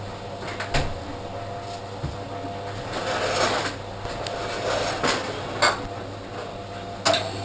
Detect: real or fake real